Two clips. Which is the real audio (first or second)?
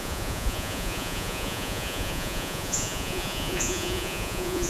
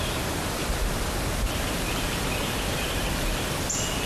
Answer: second